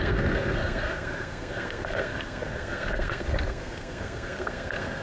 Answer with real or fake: fake